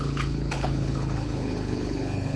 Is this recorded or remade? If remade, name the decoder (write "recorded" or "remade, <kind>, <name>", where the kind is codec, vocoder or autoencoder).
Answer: remade, codec, HILCodec